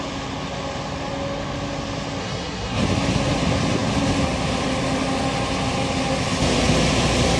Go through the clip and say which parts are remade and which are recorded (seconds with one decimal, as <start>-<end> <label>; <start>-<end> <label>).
0.0-2.2 recorded; 2.2-2.8 remade; 2.8-7.4 recorded